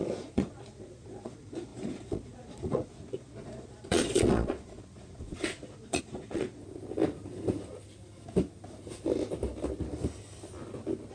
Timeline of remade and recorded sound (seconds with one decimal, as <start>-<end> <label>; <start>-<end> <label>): 0.0-6.6 remade; 6.6-11.1 recorded

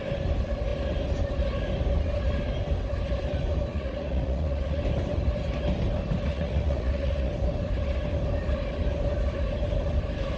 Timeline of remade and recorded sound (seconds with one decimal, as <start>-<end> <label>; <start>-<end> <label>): 0.0-3.7 recorded; 3.7-4.8 remade; 4.8-6.3 recorded; 6.3-7.3 remade; 7.3-10.4 recorded

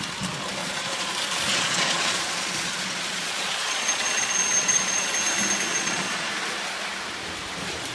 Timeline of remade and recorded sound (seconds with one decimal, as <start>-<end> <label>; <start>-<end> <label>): 0.0-0.6 recorded; 0.6-1.1 remade; 1.1-1.5 recorded; 1.5-5.1 remade; 5.1-5.7 recorded; 5.7-6.3 remade; 6.3-7.9 recorded

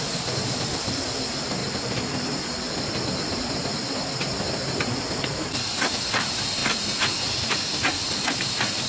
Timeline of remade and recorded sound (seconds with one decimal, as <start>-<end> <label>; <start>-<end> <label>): 0.0-8.9 recorded

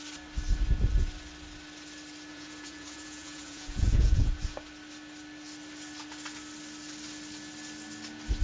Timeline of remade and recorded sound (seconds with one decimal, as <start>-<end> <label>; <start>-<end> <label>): 0.0-2.3 recorded; 2.3-4.3 remade; 4.3-8.4 recorded